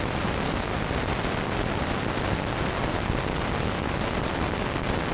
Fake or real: real